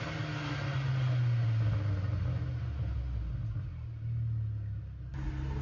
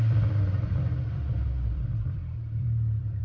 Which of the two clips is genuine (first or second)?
first